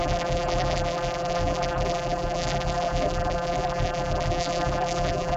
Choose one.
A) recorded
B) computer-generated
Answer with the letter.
B